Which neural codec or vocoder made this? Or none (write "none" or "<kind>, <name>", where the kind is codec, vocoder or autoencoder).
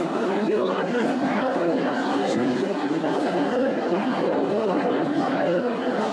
codec, SNAC